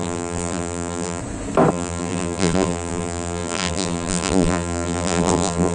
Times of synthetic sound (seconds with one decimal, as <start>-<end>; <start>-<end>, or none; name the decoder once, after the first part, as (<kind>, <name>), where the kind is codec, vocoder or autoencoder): 0.0-1.2 (vocoder, BigVGAN v2); 1.7-5.7